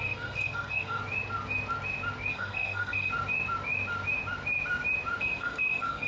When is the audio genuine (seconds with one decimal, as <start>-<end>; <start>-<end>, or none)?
1.0-2.3; 3.1-5.2